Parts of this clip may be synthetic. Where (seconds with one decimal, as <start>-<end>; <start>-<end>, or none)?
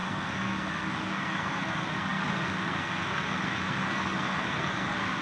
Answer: 0.0-5.2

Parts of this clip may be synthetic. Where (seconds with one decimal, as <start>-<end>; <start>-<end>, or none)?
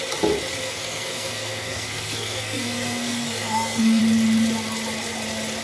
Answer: 0.6-4.0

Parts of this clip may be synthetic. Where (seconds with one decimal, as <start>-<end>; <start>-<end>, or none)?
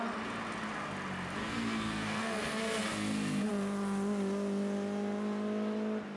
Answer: 1.4-3.5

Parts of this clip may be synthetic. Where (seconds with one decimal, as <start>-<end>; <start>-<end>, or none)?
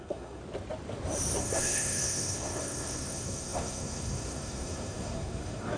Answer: 0.0-0.4; 1.4-5.8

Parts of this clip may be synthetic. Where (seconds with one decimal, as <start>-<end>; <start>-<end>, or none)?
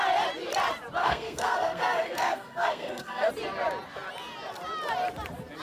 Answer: 1.0-3.3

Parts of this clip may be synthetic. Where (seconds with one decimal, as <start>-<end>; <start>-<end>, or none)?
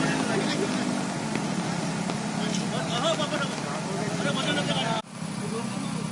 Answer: none